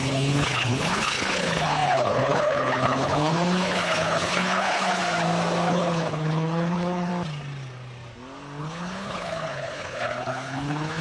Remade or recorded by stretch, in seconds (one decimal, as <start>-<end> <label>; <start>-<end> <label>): 0.0-5.0 remade; 5.0-5.7 recorded; 5.7-7.1 remade; 7.1-8.6 recorded; 8.6-11.0 remade